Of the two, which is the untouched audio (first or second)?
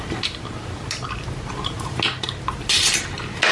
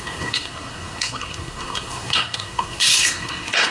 first